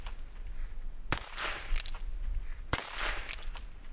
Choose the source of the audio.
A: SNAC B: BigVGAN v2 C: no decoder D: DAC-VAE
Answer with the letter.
C